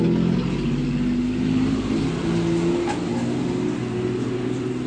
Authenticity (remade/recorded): recorded